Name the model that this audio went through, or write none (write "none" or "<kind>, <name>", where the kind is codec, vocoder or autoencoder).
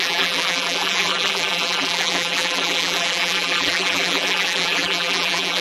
vocoder, BigVGAN v2